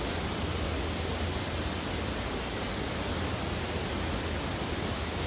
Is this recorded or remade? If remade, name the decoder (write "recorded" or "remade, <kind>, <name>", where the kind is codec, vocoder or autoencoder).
recorded